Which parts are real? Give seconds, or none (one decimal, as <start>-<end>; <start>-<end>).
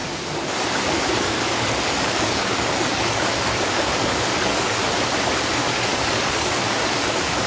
0.0-1.2; 4.8-5.6